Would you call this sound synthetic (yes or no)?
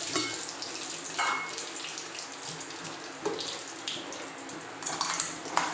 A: no